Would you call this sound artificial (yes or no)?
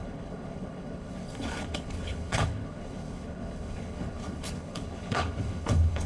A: yes